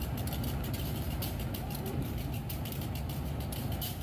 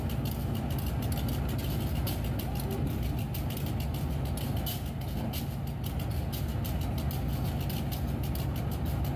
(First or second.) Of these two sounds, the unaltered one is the second